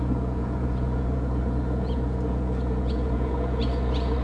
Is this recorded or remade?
remade